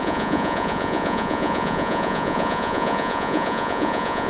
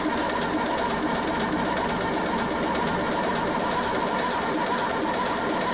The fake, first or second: first